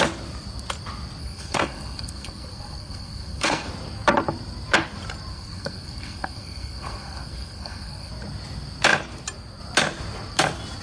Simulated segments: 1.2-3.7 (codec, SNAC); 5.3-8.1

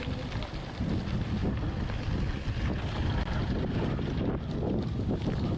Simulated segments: 0.0-1.4 (vocoder, BigVGAN v2); 4.8-5.6

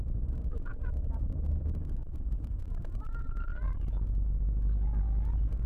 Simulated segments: 0.0-3.5 (vocoder, BigVGAN v2)

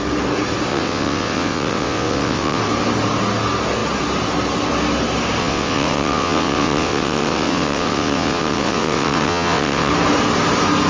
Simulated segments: 0.7-2.6 (vocoder, WaveNeXt); 5.4-9.9

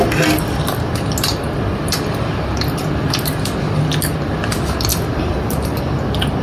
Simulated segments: 4.9-5.8 (vocoder, BigVGAN v2)

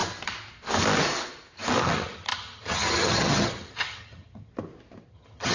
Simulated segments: 1.8-4.5 (vocoder, HiFi-GAN); 5.1-5.5

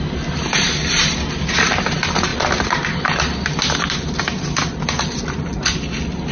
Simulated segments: none

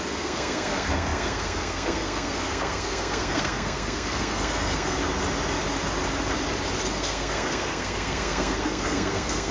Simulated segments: 0.0-5.0 (codec, SNAC); 6.9-9.5